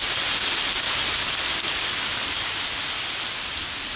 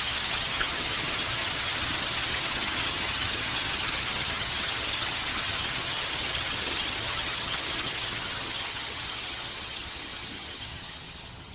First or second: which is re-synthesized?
second